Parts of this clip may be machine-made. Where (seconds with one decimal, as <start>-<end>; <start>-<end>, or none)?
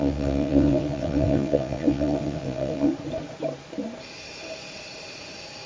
0.0-2.9